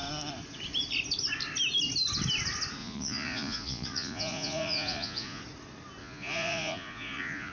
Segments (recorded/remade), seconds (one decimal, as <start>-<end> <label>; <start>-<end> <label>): 0.0-2.8 recorded; 2.8-5.4 remade; 5.4-6.0 recorded; 6.0-7.5 remade